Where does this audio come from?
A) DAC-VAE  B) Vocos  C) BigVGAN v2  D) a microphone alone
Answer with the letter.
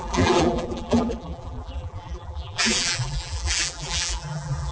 C